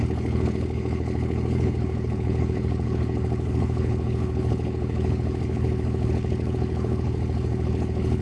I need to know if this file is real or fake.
fake